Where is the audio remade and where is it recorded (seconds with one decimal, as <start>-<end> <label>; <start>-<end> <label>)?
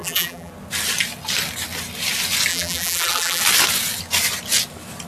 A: 0.0-0.5 remade; 0.5-2.5 recorded; 2.5-3.4 remade; 3.4-5.1 recorded